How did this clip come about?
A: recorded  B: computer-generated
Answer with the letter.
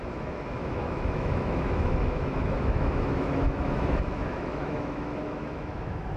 B